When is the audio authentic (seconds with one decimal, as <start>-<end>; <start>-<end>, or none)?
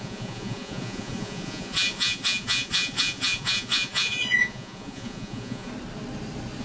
5.7-6.6